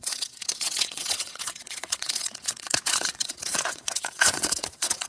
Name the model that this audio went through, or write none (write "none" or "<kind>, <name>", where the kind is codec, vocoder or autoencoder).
vocoder, WaveNeXt